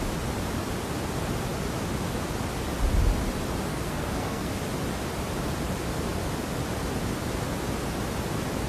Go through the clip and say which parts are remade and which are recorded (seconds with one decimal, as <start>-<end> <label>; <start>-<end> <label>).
0.0-3.7 recorded; 3.7-4.5 remade; 4.5-8.7 recorded